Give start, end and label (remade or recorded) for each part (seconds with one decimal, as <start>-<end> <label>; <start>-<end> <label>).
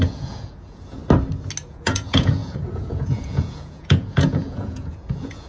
0.0-1.0 remade; 1.0-1.7 recorded; 1.7-5.5 remade